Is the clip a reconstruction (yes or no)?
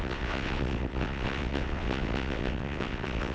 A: yes